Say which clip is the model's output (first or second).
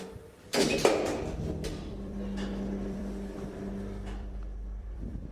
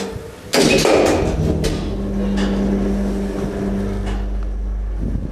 first